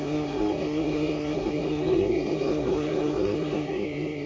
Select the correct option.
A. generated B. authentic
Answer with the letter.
A